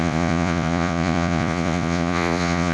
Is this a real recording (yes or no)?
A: no